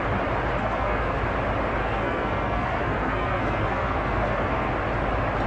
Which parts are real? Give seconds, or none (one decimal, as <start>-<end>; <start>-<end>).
0.0-0.6; 1.2-1.8; 4.7-5.5